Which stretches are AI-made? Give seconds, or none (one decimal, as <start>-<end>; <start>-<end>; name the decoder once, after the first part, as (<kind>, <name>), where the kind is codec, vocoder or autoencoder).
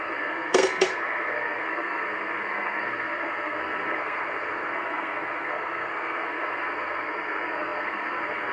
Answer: 0.0-8.5 (codec, SNAC)